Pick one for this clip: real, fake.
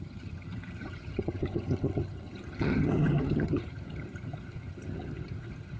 fake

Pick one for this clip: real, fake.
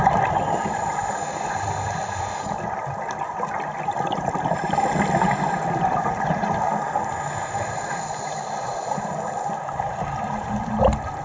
real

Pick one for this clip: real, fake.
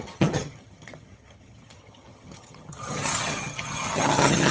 fake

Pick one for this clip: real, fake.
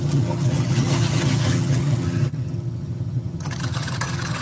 fake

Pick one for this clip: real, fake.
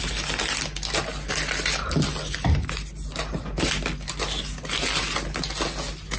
real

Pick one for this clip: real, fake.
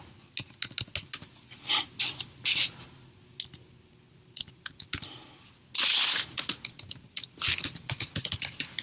real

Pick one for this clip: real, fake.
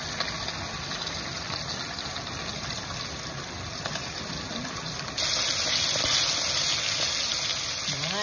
real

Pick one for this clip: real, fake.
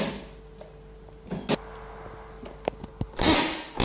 real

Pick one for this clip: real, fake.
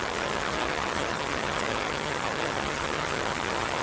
fake